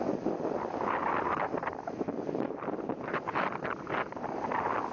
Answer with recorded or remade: recorded